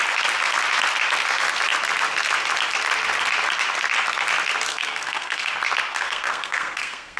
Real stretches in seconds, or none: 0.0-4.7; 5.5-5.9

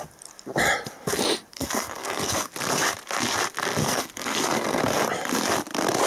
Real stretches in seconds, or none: 0.0-1.5; 2.5-3.8; 4.8-6.1

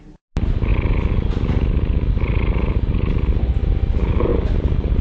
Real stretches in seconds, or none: 0.0-4.3

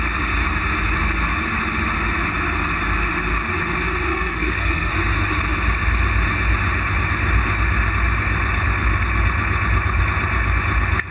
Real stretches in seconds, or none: 0.0-4.1; 4.9-11.1

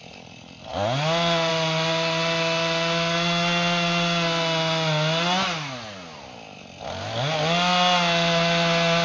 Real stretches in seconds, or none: 0.0-9.0

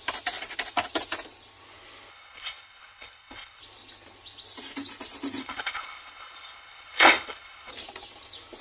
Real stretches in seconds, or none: 0.0-2.1; 3.6-5.4; 7.7-8.6

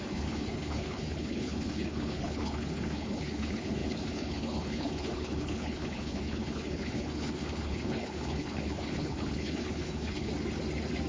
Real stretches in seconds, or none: 10.3-11.1

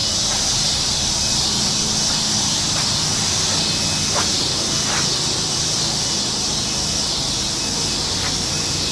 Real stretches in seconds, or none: 0.0-8.9